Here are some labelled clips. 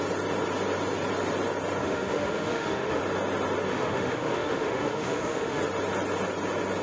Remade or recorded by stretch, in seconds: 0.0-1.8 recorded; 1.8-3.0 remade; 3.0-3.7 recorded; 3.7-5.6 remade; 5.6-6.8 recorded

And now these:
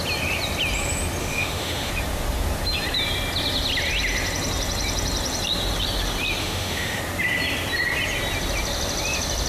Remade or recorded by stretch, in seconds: 0.0-1.2 recorded; 1.2-1.9 remade; 1.9-6.4 recorded; 6.4-7.0 remade; 7.0-9.5 recorded

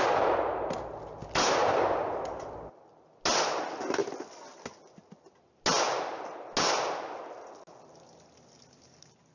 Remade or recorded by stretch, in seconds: 0.0-9.3 recorded

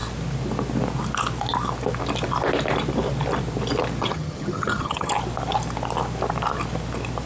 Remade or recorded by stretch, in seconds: 0.0-4.0 recorded; 4.0-5.1 remade; 5.1-7.3 recorded